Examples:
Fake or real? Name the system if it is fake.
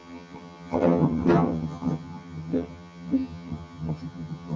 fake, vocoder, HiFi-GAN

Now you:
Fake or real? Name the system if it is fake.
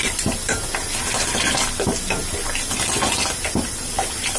real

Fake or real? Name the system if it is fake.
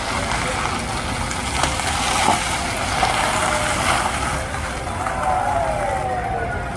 real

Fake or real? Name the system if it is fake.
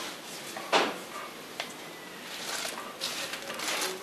real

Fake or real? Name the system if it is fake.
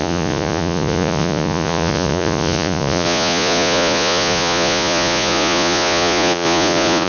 fake, vocoder, Vocos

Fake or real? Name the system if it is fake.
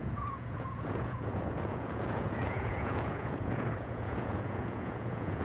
fake, vocoder, Vocos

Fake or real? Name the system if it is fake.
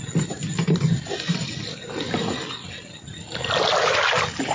real